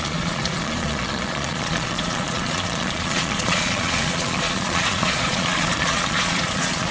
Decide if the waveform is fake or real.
fake